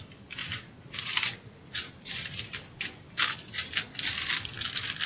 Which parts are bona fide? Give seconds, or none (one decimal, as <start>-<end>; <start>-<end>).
0.0-0.4; 3.5-5.1